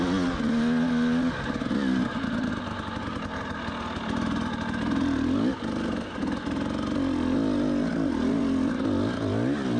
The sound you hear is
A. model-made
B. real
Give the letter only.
B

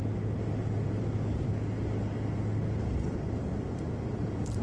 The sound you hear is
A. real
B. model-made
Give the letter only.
A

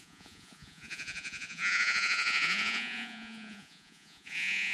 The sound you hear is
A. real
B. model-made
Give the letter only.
B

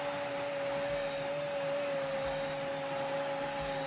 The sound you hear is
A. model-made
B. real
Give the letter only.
B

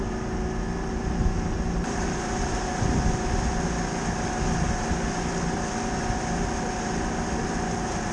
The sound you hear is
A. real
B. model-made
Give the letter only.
A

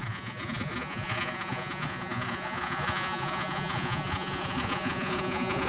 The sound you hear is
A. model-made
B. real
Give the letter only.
A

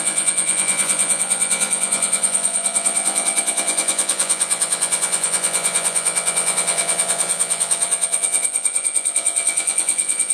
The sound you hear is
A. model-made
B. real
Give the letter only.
A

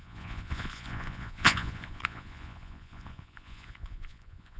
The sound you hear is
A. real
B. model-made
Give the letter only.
B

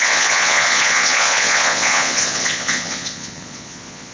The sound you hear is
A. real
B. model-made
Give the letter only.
B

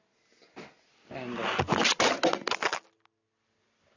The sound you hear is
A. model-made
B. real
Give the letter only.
B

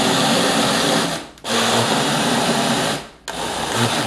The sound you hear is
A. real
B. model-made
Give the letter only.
A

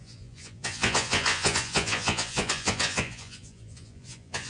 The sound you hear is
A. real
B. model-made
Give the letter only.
B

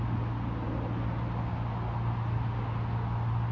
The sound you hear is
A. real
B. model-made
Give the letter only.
A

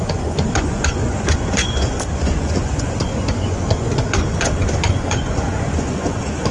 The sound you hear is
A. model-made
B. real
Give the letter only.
A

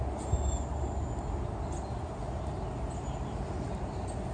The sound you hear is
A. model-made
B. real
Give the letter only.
B